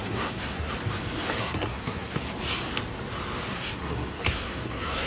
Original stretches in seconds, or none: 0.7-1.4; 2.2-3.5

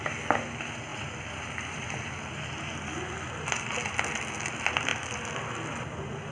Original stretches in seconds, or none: 0.0-6.3

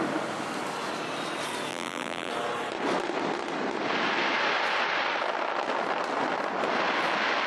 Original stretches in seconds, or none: 0.0-1.7; 2.3-7.5

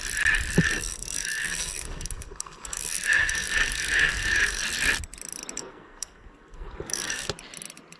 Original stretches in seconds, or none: 0.0-0.6; 4.6-5.6; 7.3-8.0

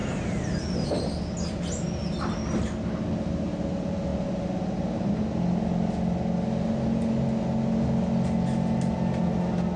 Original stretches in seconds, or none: 0.0-9.8

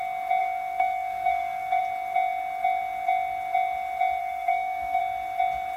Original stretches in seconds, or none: 0.0-0.4; 1.8-4.2; 5.0-5.8